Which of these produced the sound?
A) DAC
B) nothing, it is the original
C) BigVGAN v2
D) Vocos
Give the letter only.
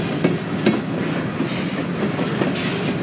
B